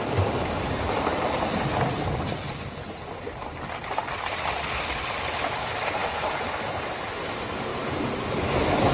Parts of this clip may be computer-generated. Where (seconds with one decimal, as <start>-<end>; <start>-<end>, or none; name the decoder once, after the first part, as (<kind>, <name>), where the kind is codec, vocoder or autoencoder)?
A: 1.1-2.4 (vocoder, BigVGAN v2); 6.0-6.5; 7.7-8.9